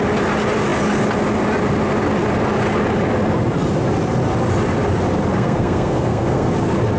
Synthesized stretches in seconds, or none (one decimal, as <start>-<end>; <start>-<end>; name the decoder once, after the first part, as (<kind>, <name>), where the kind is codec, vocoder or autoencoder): 5.3-6.5 (codec, SNAC)